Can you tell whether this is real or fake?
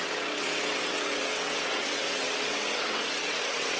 fake